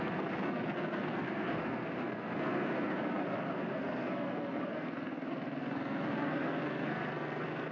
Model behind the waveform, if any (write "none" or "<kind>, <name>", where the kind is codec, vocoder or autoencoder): codec, SNAC